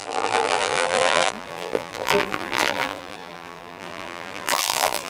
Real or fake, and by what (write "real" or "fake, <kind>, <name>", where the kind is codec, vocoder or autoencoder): fake, vocoder, BigVGAN v2